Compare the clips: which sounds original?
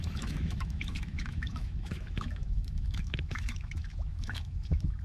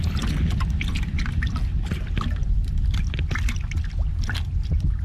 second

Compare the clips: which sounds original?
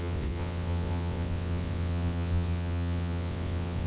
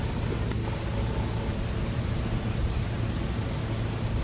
second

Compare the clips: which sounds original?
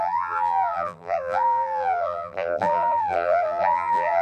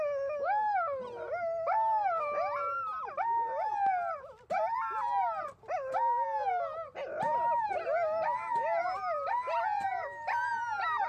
second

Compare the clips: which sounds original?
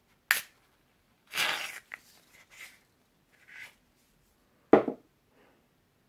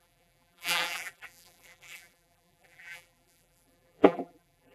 first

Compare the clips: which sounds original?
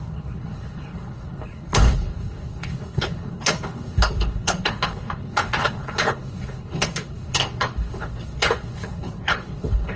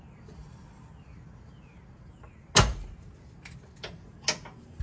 second